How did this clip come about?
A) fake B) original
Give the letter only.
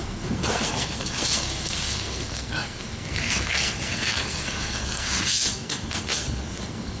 A